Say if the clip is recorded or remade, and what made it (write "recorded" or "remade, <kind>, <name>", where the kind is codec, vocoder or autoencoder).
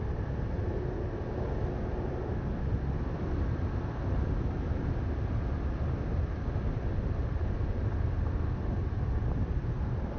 recorded